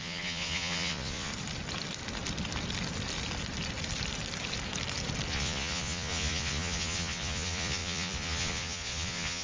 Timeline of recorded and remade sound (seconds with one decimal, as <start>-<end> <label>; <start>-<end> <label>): 0.0-1.3 remade; 1.3-5.3 recorded; 5.3-9.4 remade